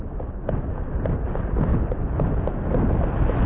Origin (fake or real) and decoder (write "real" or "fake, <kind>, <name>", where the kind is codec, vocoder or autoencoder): real